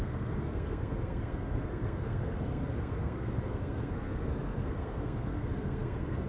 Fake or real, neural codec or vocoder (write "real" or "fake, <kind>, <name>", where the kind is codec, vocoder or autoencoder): fake, codec, SNAC